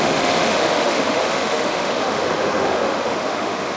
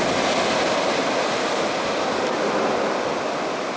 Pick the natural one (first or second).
second